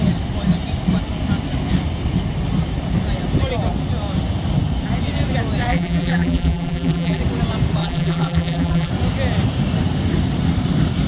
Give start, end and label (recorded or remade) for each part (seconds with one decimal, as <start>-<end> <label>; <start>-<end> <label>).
0.0-5.7 recorded; 5.7-7.2 remade; 7.2-7.8 recorded; 7.8-8.9 remade; 8.9-11.1 recorded